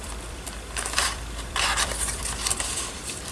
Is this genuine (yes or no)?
no